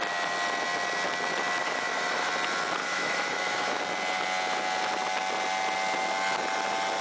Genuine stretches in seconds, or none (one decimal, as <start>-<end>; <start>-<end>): 0.0-1.6; 2.3-2.8; 3.8-7.0